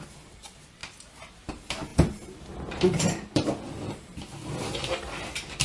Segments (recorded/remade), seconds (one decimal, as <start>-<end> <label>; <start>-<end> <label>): 0.0-5.6 recorded